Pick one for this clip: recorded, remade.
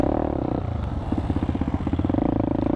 remade